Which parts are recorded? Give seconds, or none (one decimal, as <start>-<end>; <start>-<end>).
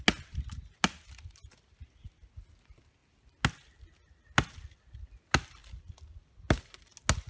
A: 0.0-7.3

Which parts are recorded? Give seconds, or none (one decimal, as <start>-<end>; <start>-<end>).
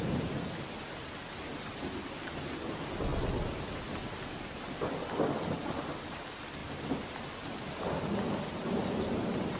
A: 0.0-9.6